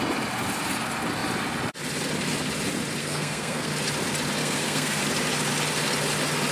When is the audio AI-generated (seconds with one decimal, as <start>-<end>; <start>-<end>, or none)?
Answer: 3.0-3.7; 4.4-5.0